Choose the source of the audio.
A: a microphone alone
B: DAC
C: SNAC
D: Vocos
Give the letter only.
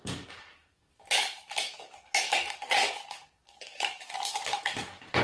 B